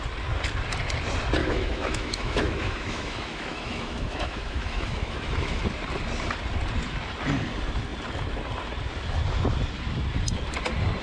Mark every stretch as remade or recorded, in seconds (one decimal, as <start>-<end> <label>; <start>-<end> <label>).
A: 0.0-1.4 recorded; 1.4-5.6 remade; 5.6-11.0 recorded